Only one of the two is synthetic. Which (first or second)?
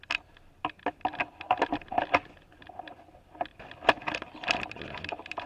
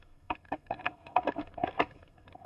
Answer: second